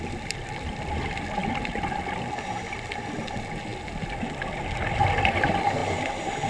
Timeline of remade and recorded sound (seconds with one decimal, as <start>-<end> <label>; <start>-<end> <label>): 0.0-6.5 recorded